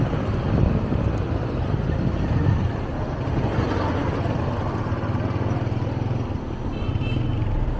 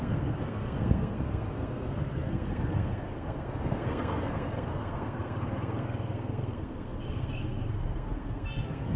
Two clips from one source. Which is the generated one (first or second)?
second